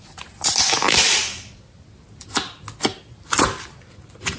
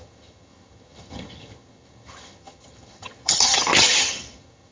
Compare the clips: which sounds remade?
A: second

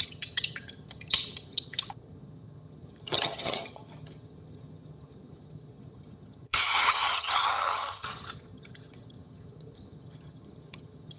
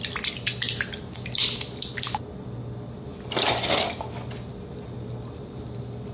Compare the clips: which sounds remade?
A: first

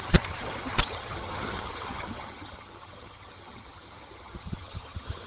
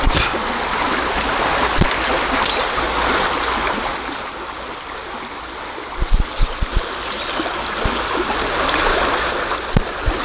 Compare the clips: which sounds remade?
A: first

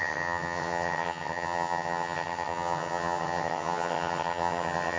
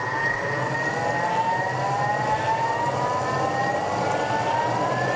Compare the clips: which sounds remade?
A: first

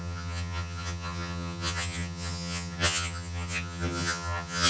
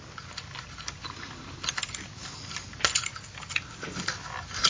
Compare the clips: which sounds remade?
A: first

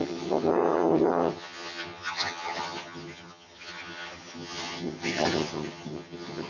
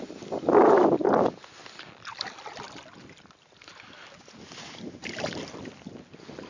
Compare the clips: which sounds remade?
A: first